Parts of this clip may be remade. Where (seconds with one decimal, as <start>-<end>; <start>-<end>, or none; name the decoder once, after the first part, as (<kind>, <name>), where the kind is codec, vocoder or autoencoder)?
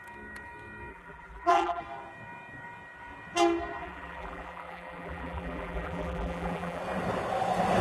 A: 0.9-1.8 (vocoder, BigVGAN v2); 3.8-6.8